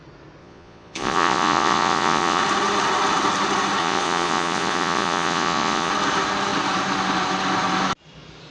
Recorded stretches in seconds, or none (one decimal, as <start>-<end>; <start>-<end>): 0.0-0.4; 2.4-3.8; 5.9-8.5